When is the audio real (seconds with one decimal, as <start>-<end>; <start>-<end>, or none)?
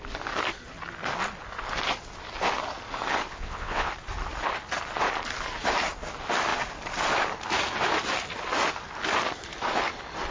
0.0-3.3; 3.9-10.3